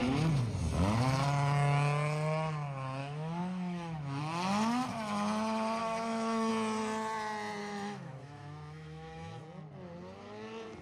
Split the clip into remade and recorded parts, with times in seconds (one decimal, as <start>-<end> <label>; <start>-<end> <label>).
0.0-3.0 recorded; 3.0-4.2 remade; 4.2-5.8 recorded; 5.8-6.5 remade; 6.5-7.6 recorded; 7.6-9.4 remade; 9.4-10.8 recorded